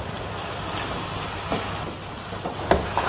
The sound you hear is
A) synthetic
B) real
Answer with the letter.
B